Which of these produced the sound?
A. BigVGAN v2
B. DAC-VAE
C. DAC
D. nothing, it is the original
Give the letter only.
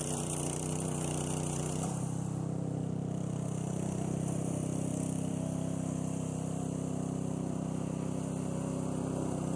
A